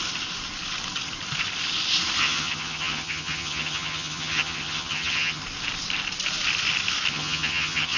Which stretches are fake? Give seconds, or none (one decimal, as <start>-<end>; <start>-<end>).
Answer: 2.2-5.4; 7.1-8.0